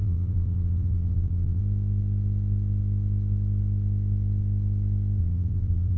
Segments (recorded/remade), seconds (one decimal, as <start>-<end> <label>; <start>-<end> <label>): 0.0-1.6 remade; 1.6-5.2 recorded; 5.2-6.0 remade